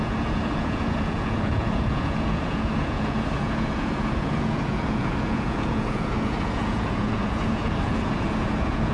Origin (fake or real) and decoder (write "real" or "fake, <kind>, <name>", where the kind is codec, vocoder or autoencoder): fake, vocoder, Vocos